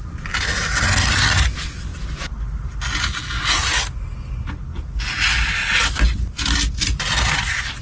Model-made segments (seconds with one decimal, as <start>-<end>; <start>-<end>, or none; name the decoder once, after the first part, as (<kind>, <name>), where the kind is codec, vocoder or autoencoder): none